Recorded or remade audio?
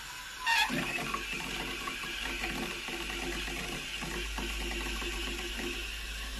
recorded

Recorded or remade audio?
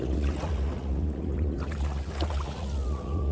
remade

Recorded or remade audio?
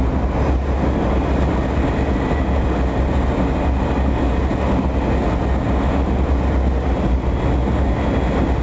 recorded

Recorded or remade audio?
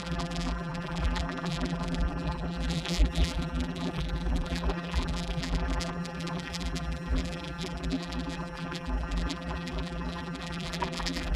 remade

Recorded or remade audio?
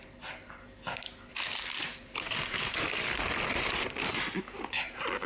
recorded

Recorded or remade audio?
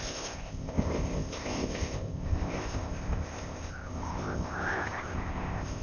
remade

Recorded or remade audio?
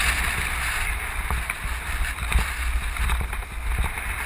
recorded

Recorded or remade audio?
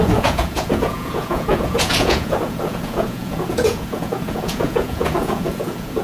remade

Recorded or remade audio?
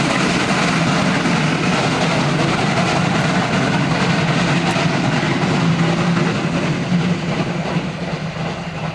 recorded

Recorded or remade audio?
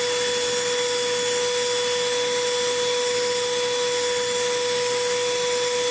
recorded